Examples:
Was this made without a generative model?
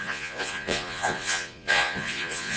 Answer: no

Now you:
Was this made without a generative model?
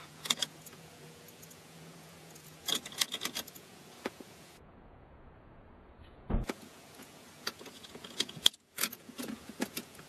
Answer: no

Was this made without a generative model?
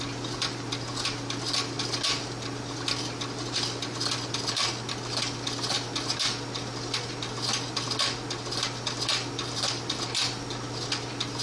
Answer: yes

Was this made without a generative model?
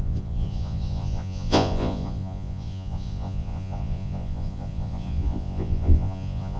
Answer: no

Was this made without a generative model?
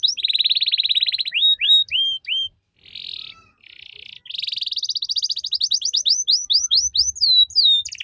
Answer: yes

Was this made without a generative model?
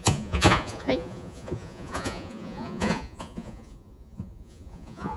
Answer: no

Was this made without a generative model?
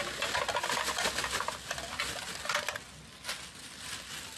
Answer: yes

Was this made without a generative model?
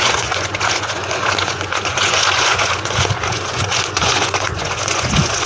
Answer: no